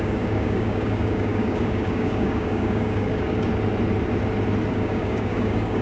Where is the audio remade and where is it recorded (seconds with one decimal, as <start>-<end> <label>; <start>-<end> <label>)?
0.0-3.5 remade; 3.5-4.7 recorded; 4.7-5.8 remade